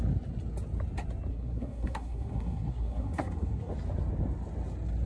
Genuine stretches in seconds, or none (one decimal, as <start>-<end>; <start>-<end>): 0.0-1.3; 3.7-5.1